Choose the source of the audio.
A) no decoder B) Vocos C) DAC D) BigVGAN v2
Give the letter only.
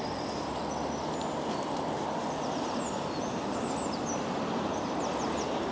A